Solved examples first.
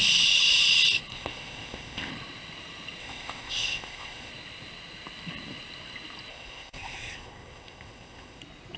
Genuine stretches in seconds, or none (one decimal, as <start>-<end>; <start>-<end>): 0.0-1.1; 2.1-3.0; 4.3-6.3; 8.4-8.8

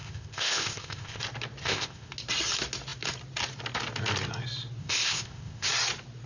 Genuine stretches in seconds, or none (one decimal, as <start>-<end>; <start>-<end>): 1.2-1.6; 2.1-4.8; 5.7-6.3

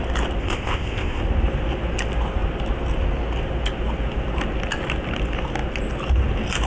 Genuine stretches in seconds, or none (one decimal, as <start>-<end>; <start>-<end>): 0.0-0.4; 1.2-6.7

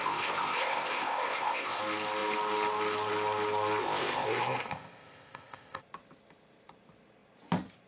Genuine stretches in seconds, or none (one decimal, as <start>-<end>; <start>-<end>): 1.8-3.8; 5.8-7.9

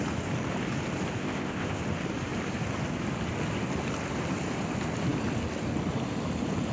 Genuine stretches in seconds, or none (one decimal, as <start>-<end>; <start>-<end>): 0.0-1.2; 1.8-6.7

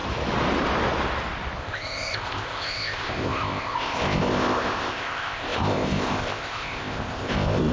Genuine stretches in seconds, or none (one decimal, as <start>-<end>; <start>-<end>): 0.0-1.6

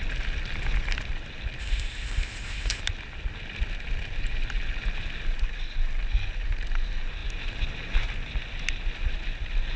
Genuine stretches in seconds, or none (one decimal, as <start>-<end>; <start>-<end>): 0.0-1.6; 2.8-9.8

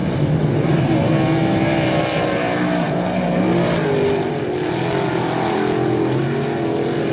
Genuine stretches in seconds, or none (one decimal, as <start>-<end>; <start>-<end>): 0.0-7.1